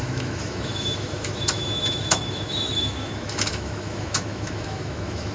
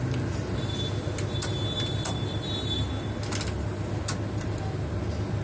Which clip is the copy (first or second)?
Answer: first